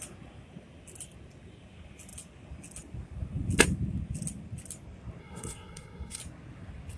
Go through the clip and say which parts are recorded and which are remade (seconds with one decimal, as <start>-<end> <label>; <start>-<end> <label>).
0.0-5.2 recorded; 5.2-6.2 remade; 6.2-7.0 recorded